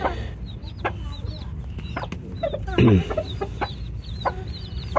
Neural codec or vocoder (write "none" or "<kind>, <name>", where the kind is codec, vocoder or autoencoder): none